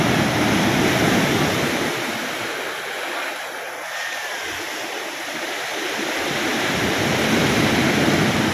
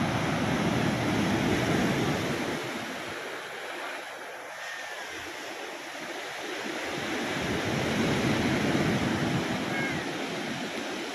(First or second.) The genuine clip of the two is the second